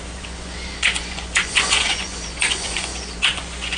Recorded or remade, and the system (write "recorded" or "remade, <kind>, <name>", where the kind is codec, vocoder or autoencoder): remade, vocoder, Vocos